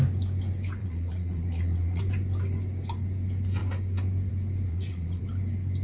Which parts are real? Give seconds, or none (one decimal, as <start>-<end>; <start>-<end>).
0.0-0.8; 2.0-4.7; 5.2-5.8

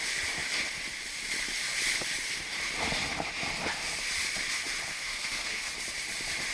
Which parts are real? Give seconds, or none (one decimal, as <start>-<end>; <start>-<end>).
0.0-4.9; 5.7-6.5

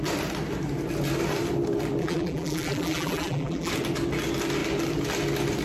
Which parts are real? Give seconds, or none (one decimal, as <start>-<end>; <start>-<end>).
0.0-2.0; 3.7-5.6

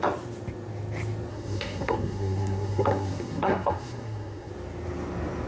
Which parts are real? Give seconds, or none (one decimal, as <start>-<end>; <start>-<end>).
0.0-1.3; 4.5-5.5